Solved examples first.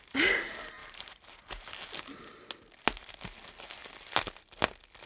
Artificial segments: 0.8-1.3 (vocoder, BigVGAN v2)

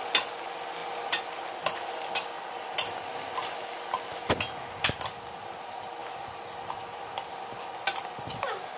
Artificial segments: none

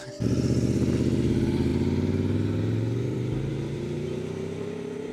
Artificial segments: 0.0-5.1 (vocoder, BigVGAN v2)

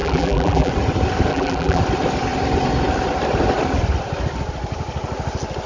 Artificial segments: 0.0-0.7 (vocoder, BigVGAN v2); 1.3-1.8

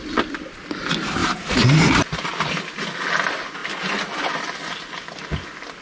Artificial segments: 1.2-2.4 (vocoder, BigVGAN v2)

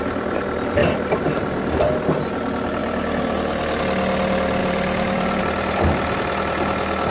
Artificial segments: 0.8-1.9 (vocoder, BigVGAN v2); 2.8-3.8; 4.6-5.4

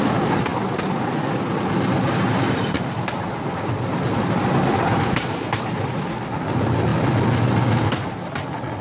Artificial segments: none